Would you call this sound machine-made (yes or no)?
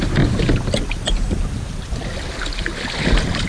no